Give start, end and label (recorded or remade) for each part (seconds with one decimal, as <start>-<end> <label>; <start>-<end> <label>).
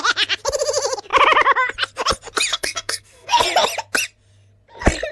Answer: 0.0-2.5 recorded; 2.5-3.4 remade; 3.4-5.1 recorded